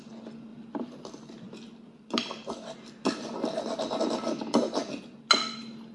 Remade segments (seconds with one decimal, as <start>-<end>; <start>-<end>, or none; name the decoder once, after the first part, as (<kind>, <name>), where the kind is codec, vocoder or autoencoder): none